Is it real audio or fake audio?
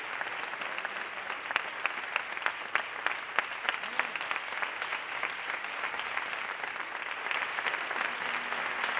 real